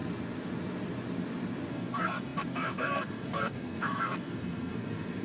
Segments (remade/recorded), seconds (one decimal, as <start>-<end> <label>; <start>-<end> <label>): 0.0-1.7 recorded; 1.7-5.2 remade